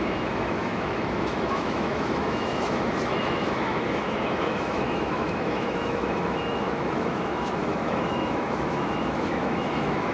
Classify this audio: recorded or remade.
remade